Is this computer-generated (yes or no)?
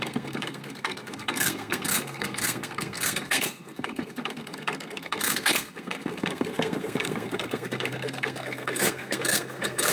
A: yes